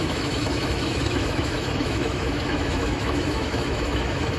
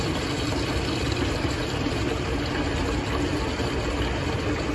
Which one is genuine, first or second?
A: second